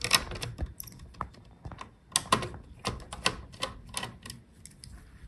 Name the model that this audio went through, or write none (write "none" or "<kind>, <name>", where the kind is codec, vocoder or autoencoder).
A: none